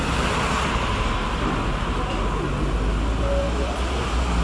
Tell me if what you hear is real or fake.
real